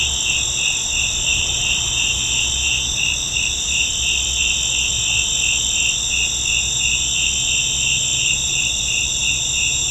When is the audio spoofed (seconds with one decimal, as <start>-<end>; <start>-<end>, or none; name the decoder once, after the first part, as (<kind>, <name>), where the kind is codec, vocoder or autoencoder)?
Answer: 1.3-3.9 (vocoder, BigVGAN v2); 8.1-9.3